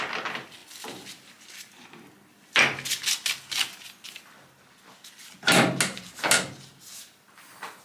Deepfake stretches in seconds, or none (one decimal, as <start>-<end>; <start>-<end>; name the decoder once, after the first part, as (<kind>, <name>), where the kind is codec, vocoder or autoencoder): none